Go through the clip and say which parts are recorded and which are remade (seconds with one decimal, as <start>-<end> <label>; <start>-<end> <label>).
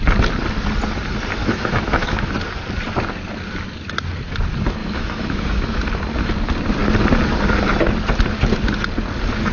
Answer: 0.0-1.4 recorded; 1.4-2.3 remade; 2.3-4.8 recorded; 4.8-5.8 remade; 5.8-9.5 recorded